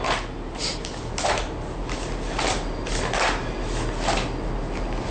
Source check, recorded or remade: recorded